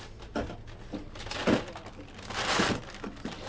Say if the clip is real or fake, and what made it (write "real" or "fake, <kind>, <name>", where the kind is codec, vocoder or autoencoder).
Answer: real